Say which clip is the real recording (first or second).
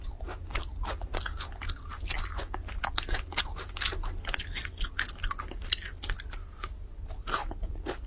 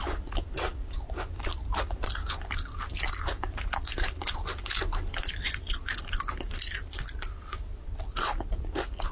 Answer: first